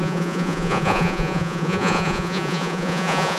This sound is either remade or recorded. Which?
remade